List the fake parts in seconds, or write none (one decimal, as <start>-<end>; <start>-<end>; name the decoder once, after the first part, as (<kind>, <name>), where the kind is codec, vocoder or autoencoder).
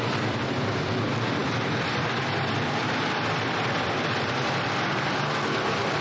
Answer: 0.0-6.0 (vocoder, BigVGAN v2)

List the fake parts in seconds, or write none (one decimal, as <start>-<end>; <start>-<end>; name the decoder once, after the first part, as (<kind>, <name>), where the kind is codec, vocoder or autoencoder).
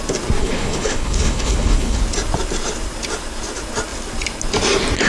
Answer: 0.4-2.0 (codec, HILCodec)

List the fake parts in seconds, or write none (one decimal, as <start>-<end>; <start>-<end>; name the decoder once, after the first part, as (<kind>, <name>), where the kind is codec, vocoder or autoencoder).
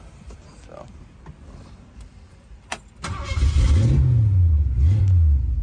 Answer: 0.0-2.7 (vocoder, BigVGAN v2)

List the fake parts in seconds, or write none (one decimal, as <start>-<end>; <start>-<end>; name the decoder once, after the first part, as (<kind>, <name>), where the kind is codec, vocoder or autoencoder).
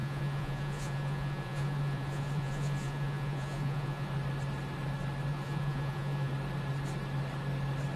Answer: 0.0-4.1 (vocoder, Vocos); 5.3-6.3